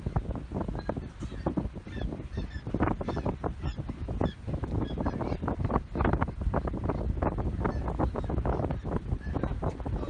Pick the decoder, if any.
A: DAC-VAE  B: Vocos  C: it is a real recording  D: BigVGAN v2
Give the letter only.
C